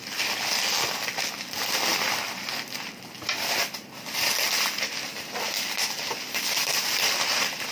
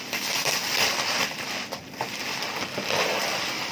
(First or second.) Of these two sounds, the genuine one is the first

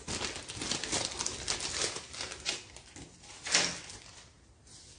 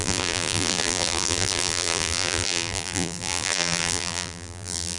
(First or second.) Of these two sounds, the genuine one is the first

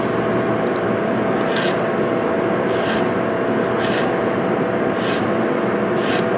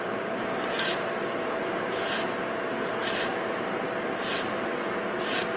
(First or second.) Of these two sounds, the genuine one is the first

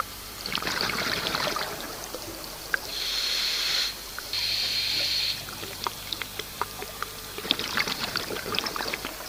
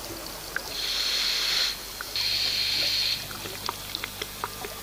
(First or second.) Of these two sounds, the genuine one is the second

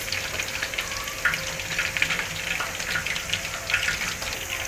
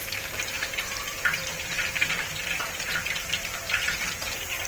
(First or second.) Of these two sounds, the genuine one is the first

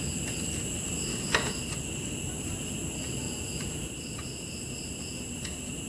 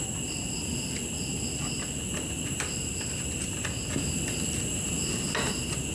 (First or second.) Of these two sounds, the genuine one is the first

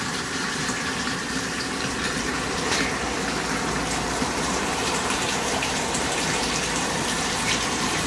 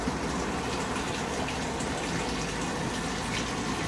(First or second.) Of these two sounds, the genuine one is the second